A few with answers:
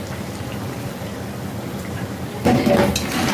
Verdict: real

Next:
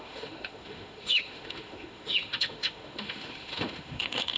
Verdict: fake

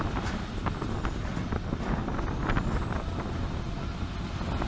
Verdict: real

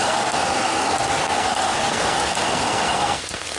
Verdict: fake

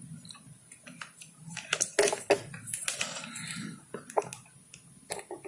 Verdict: real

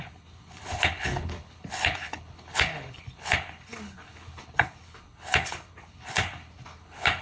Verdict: fake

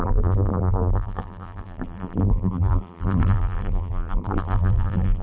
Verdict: fake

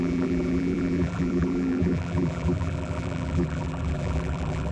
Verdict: fake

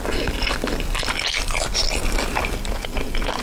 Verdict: real